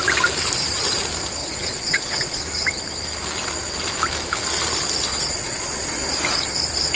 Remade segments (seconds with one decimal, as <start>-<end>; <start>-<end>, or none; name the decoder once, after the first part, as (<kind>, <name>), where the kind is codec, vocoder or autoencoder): 1.4-2.4 (vocoder, Vocos); 5.1-6.1